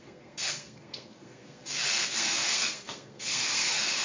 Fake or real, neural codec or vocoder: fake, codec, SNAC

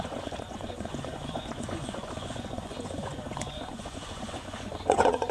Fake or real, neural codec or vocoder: fake, vocoder, Vocos